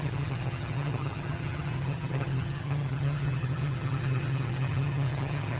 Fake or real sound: fake